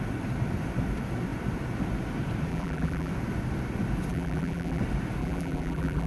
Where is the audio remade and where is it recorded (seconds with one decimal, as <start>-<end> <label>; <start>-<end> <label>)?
0.0-2.5 recorded; 2.5-3.1 remade; 3.1-4.1 recorded; 4.1-4.8 remade; 4.8-5.2 recorded; 5.2-6.1 remade